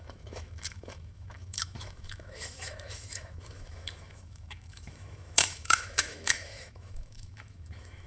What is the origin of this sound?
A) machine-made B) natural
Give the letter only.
A